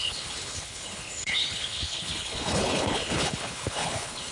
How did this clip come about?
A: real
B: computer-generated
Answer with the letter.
B